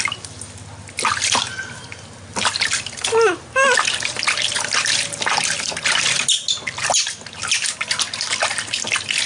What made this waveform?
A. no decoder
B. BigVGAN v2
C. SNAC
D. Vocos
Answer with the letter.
A